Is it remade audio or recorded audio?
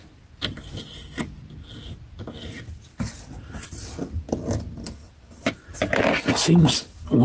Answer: recorded